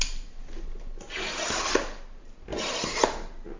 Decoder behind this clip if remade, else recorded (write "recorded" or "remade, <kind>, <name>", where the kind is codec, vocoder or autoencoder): recorded